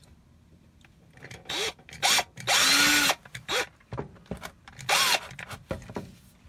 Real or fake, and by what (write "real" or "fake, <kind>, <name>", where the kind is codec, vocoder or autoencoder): real